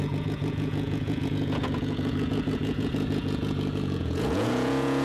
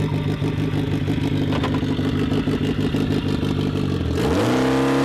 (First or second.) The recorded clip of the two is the second